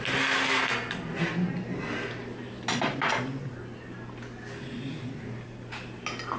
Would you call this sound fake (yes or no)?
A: no